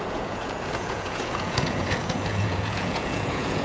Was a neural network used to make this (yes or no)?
yes